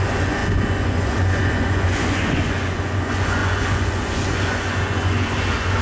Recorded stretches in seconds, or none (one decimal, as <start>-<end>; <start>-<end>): none